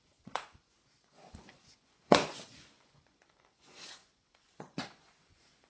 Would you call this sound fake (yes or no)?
yes